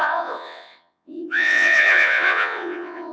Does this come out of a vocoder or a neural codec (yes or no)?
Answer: yes